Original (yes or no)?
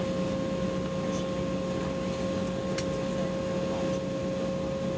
yes